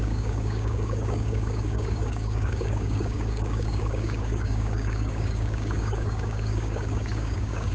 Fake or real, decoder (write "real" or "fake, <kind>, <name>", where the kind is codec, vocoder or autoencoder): fake, codec, DAC